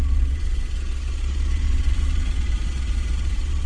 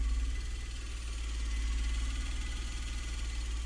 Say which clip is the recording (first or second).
second